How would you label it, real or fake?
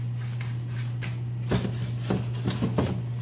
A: real